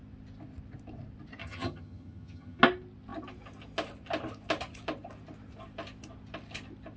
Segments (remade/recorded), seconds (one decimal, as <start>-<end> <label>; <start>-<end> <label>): 0.0-1.4 recorded; 1.4-2.6 remade; 2.6-7.0 recorded